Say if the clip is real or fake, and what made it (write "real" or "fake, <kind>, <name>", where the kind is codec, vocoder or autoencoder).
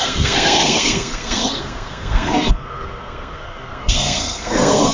fake, codec, SNAC